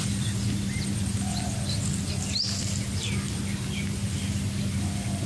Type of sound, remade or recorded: recorded